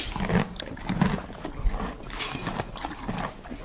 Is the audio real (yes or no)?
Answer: yes